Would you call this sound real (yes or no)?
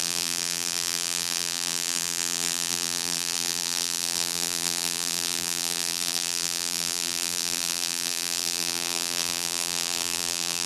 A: no